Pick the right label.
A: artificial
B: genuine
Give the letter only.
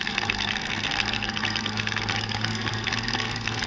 A